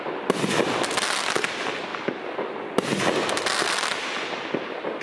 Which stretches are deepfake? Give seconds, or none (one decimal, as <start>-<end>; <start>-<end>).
none